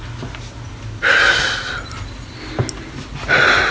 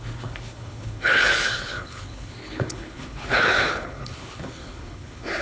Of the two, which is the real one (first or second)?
first